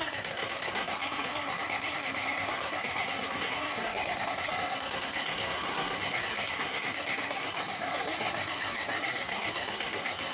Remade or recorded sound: remade